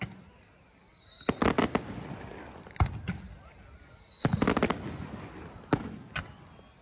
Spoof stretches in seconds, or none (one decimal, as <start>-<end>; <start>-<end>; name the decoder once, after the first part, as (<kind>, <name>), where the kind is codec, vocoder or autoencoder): none